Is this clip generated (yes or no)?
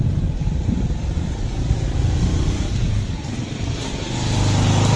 no